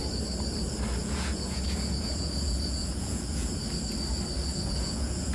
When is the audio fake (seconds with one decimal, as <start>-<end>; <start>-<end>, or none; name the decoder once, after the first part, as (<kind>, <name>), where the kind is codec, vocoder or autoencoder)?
1.0-3.5 (vocoder, Vocos); 4.5-5.3